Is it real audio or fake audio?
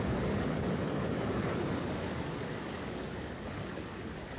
fake